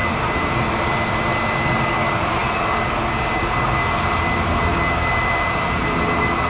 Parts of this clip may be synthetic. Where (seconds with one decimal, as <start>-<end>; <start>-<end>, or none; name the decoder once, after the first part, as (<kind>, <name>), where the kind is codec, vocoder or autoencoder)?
none